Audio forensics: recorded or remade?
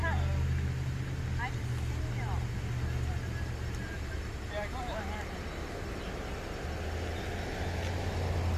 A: recorded